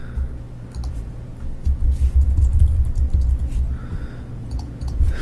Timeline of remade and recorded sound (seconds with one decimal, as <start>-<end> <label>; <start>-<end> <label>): 0.0-0.9 recorded; 0.9-1.3 remade; 1.3-4.4 recorded; 4.4-5.2 remade